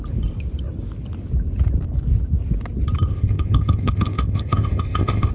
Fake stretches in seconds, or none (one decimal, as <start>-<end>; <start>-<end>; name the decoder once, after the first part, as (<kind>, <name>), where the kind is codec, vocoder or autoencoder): 3.1-5.3 (codec, ZipCodec)